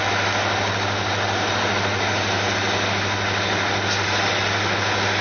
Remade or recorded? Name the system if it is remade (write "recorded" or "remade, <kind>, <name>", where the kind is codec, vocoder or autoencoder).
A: recorded